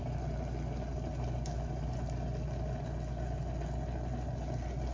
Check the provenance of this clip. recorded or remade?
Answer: recorded